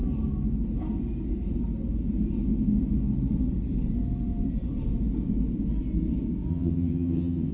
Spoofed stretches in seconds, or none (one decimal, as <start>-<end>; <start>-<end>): 6.5-7.5